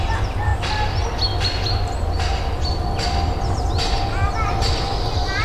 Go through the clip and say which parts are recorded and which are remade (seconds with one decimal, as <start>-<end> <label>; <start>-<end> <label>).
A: 0.0-5.4 recorded